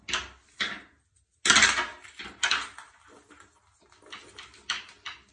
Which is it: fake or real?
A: real